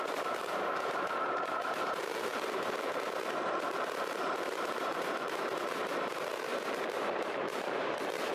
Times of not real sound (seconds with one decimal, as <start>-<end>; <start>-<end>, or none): 0.0-8.3